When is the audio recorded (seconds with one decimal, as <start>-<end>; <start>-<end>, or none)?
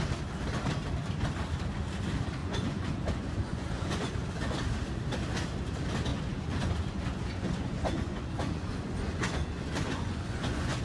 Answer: 0.0-2.4; 4.1-6.1